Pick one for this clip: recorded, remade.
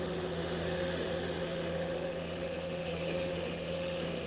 remade